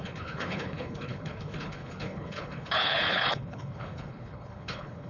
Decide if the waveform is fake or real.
fake